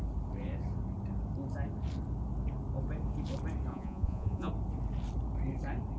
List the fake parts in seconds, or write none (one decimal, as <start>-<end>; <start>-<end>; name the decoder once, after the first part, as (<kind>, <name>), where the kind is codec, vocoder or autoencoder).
3.7-4.5 (vocoder, Vocos)